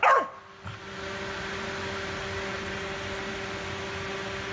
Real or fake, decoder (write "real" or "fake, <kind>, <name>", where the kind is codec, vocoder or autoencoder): real